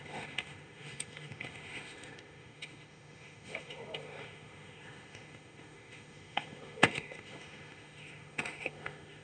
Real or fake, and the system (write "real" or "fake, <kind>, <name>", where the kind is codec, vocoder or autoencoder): fake, autoencoder, DAC-VAE